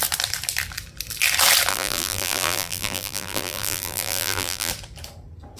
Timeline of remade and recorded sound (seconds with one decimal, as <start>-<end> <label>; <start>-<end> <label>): 0.0-1.7 recorded; 1.7-4.7 remade; 4.7-5.6 recorded